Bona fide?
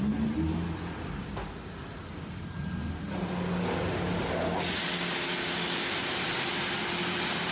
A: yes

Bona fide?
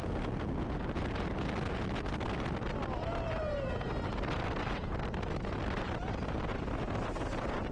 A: yes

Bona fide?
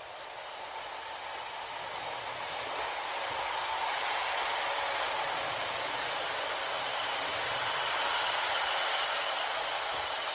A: yes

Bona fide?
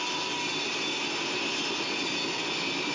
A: yes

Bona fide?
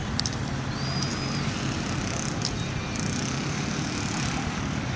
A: yes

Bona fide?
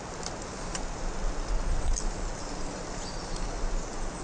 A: yes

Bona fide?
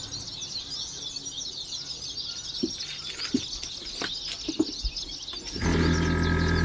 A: yes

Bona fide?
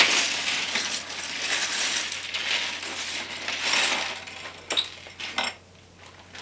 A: yes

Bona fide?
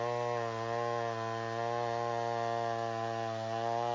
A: yes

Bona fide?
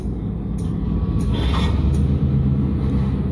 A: yes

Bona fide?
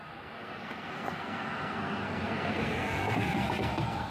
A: no